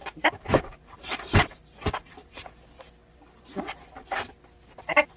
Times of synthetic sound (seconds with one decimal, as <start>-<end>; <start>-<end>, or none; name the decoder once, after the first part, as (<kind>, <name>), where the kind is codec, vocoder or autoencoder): 0.0-2.2 (vocoder, BigVGAN v2); 4.8-5.2